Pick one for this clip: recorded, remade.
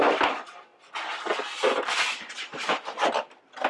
recorded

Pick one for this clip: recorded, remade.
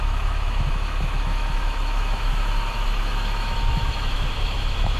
remade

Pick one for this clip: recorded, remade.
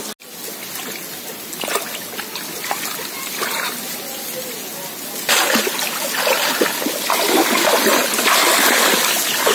recorded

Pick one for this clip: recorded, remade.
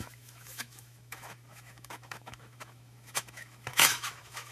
remade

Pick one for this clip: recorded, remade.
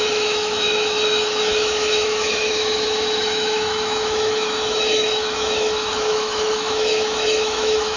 remade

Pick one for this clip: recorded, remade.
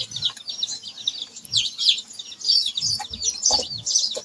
recorded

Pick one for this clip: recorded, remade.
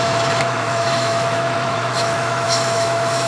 remade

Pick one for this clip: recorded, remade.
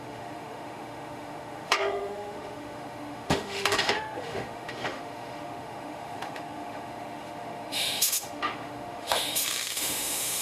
remade